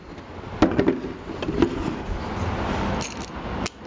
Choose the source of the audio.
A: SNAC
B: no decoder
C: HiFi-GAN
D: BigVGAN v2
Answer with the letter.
B